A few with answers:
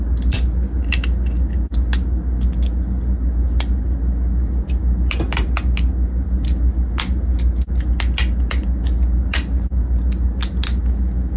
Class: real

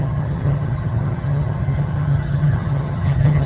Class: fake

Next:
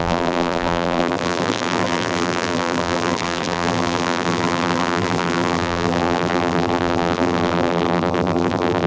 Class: fake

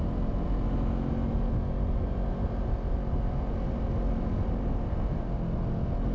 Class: real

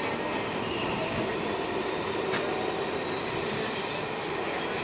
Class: real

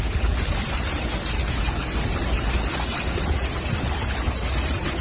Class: real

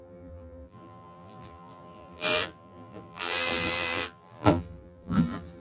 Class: fake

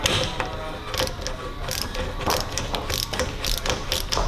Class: real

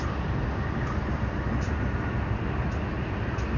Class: real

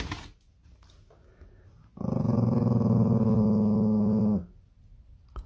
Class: real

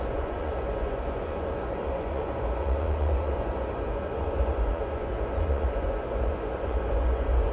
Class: fake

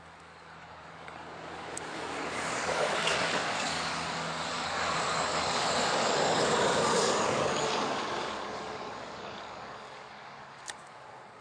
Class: fake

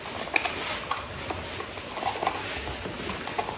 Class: real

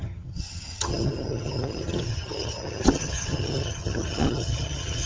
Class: fake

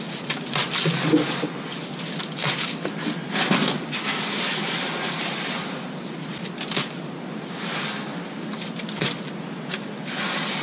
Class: real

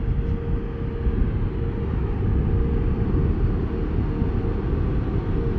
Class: real